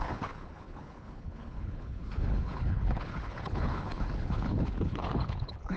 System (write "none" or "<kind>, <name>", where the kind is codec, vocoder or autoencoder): codec, HILCodec